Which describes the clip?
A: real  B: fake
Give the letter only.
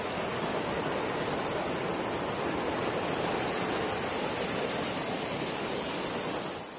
A